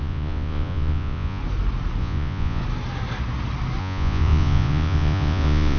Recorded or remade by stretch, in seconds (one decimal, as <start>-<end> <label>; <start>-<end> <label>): 0.0-1.4 remade; 1.4-2.0 recorded; 2.0-2.6 remade; 2.6-3.8 recorded; 3.8-5.8 remade